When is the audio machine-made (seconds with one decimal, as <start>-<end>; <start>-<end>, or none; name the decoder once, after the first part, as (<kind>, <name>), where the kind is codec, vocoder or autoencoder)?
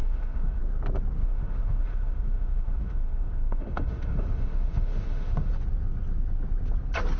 0.0-0.6 (autoencoder, DAC-VAE); 1.2-5.5